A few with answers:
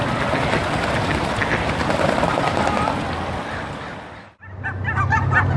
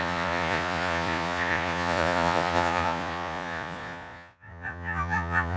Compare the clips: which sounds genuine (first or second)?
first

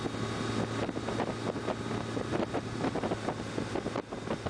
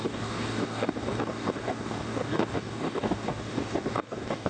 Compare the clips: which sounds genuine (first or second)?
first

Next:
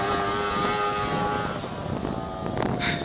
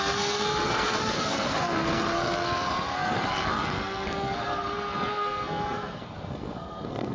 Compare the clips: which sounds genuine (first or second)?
first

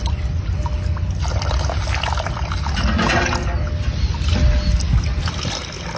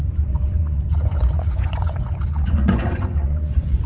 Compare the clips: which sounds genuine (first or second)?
first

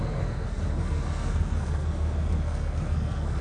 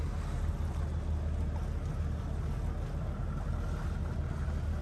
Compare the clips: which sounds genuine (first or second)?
second